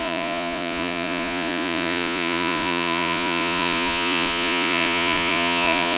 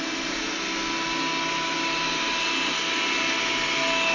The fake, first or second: first